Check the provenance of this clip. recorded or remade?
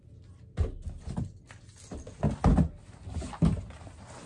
recorded